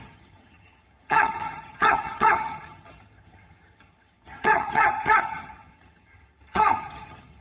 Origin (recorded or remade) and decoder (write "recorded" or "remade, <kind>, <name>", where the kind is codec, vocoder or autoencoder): remade, vocoder, HiFi-GAN